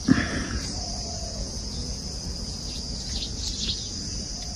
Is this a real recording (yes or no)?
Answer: no